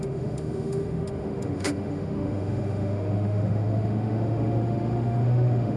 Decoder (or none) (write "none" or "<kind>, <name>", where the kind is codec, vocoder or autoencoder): autoencoder, DAC-VAE